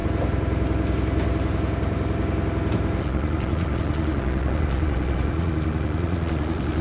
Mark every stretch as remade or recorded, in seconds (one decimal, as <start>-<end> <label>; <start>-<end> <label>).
0.0-3.0 recorded; 3.0-6.8 remade